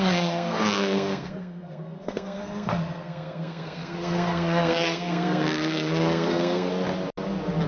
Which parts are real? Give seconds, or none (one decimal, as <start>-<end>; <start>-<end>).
6.7-7.7